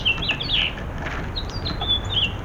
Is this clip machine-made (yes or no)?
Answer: no